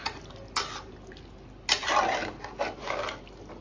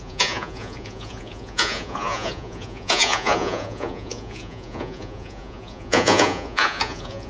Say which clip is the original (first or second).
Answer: first